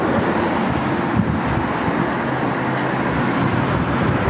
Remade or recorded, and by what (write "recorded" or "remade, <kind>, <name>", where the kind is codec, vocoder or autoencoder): recorded